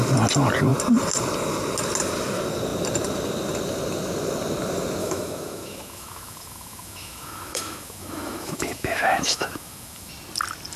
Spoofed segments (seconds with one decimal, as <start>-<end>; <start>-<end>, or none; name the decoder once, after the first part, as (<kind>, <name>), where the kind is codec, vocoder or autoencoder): 5.0-10.1 (autoencoder, DAC-VAE)

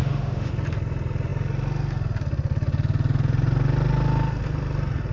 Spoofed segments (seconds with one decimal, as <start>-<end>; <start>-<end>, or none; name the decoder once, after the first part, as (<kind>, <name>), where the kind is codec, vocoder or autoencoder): 0.0-0.5 (autoencoder, DAC-VAE)

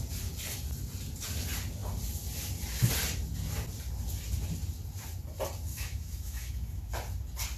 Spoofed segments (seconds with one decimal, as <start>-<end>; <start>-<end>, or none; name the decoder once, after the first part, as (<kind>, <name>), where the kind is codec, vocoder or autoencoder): 5.7-6.9 (autoencoder, DAC-VAE)